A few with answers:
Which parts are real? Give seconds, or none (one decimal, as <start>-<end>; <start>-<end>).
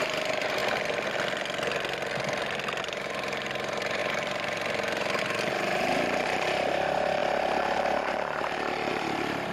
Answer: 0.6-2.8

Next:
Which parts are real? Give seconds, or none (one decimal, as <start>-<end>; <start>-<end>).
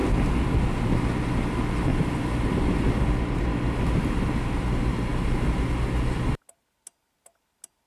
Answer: 0.0-1.9; 2.9-7.9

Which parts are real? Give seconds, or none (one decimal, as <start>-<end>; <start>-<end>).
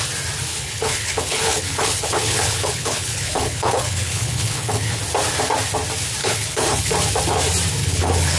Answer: 0.0-0.5; 5.0-6.2; 6.9-7.8